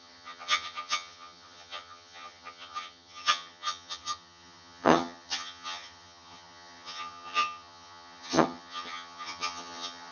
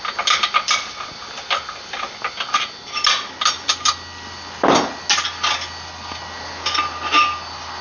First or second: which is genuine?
second